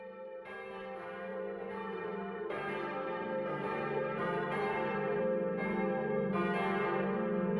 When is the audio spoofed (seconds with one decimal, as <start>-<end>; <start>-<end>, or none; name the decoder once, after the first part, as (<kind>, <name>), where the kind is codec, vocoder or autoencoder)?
1.3-5.2 (vocoder, BigVGAN v2)